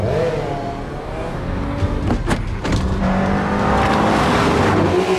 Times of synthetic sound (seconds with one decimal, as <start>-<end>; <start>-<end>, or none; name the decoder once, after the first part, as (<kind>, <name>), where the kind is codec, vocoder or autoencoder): 1.0-1.8 (codec, DAC)